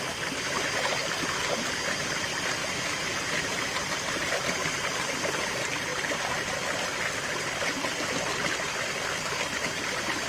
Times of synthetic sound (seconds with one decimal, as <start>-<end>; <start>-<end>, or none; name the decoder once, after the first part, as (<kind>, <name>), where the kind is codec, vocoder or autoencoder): 1.0-1.5 (vocoder, BigVGAN v2); 2.6-4.3; 5.9-6.5